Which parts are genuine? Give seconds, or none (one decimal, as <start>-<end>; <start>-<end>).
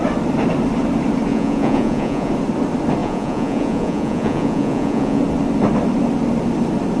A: 0.0-1.3; 2.3-3.0; 5.2-7.0